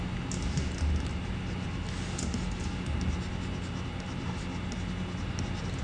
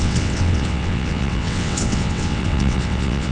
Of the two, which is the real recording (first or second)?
first